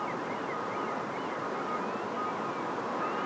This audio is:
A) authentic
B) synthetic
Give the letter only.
A